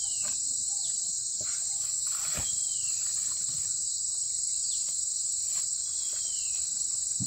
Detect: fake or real fake